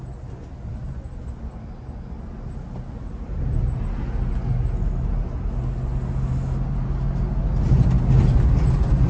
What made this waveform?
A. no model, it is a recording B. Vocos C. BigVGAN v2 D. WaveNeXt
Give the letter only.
A